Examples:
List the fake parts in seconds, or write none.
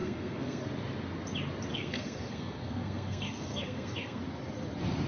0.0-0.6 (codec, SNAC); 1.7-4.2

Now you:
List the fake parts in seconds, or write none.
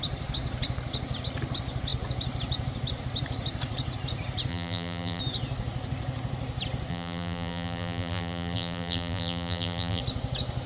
4.5-5.2 (vocoder, BigVGAN v2); 6.9-10.0